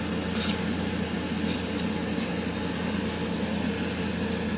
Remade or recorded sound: recorded